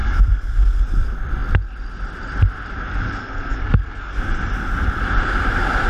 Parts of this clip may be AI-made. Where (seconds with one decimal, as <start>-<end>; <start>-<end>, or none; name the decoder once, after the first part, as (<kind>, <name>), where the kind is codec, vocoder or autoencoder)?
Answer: 0.0-0.8 (codec, SNAC); 3.2-4.2

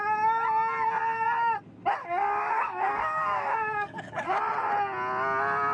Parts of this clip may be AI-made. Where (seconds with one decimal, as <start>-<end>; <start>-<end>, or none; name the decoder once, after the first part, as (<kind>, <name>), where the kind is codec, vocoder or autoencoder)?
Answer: 2.0-4.4 (codec, DAC)

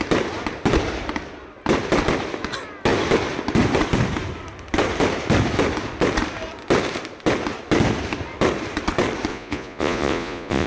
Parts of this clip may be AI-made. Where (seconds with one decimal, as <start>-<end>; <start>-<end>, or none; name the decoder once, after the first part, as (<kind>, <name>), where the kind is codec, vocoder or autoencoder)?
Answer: 9.3-10.7 (vocoder, Vocos)

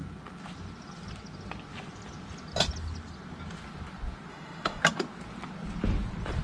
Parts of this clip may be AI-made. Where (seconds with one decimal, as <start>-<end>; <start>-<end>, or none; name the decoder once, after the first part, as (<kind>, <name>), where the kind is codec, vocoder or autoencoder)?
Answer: 4.3-4.8 (autoencoder, DAC-VAE)

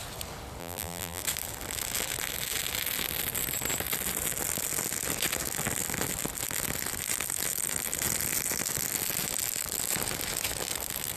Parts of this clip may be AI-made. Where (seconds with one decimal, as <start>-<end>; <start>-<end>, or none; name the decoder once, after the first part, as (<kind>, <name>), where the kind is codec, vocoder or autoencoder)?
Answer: 0.6-1.2 (vocoder, BigVGAN v2)

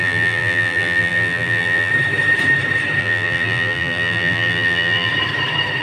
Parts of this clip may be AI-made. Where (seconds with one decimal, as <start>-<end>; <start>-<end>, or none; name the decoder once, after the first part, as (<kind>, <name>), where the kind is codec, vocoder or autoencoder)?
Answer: 0.0-1.9 (vocoder, BigVGAN v2); 3.0-5.1

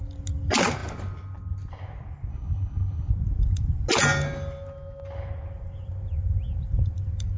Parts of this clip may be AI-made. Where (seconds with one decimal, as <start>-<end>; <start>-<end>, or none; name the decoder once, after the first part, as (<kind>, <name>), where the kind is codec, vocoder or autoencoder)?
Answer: 2.3-3.1 (codec, HILCodec)

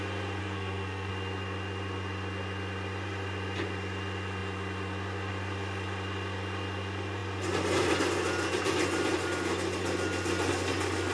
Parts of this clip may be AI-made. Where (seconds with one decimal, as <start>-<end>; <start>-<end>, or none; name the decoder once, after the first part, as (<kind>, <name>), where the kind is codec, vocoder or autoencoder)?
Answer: 0.4-1.1 (codec, SNAC)